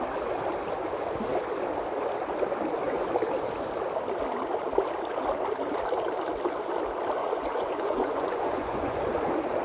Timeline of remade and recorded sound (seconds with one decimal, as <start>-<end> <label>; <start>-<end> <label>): 0.0-7.2 recorded; 7.2-9.0 remade; 9.0-9.6 recorded